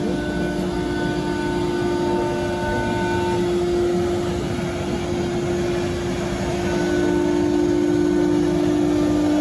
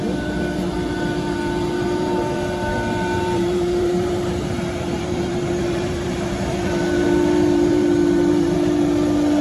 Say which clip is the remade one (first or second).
second